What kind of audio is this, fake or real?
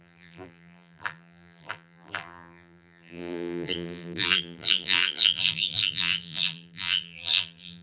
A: fake